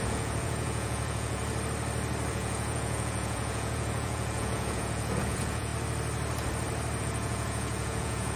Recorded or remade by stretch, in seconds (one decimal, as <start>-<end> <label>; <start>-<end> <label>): 0.0-1.4 remade; 1.4-2.3 recorded; 2.3-5.7 remade; 5.7-7.0 recorded; 7.0-8.4 remade